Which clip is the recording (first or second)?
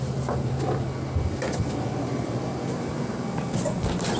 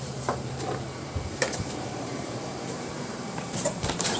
first